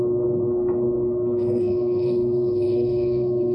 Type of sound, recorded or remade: remade